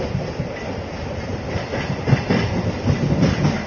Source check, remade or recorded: recorded